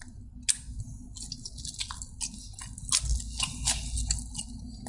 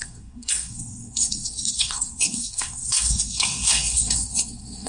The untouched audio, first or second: first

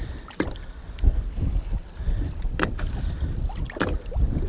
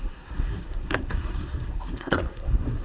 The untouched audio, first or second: first